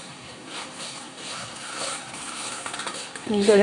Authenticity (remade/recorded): remade